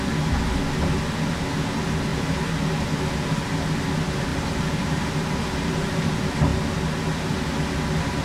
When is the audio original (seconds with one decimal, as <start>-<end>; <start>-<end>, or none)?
0.0-2.1; 2.7-4.3; 6.1-8.2